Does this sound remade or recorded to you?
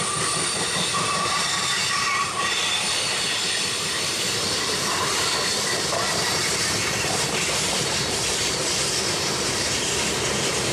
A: remade